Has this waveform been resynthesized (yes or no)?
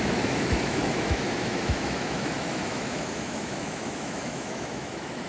yes